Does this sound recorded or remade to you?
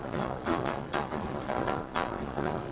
remade